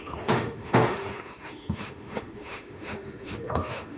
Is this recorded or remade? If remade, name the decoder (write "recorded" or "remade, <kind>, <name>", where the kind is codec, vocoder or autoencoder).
remade, autoencoder, DAC-VAE